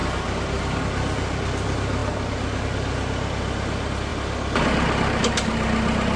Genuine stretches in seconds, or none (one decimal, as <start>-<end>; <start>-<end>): 0.0-6.2